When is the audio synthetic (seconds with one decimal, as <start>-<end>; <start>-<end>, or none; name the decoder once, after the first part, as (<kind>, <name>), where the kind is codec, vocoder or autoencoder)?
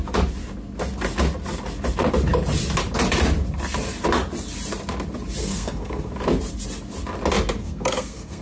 5.4-6.1 (codec, SNAC); 7.6-8.4